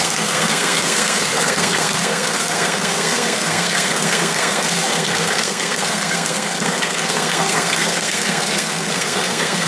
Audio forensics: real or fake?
fake